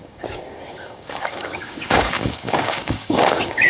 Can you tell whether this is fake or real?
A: fake